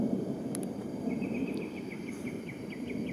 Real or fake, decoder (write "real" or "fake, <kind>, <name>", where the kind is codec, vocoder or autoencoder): fake, vocoder, BigVGAN v2